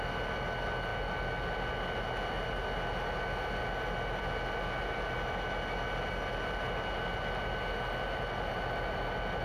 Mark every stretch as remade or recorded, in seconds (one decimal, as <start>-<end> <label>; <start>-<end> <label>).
0.0-9.4 recorded